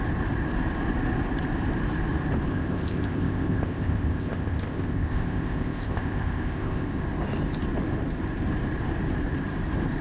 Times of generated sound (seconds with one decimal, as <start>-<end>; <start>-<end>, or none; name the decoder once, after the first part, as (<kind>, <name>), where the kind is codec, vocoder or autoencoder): 2.5-7.0 (codec, ZipCodec)